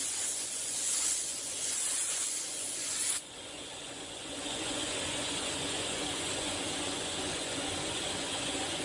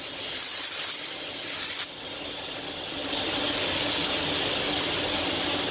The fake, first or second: first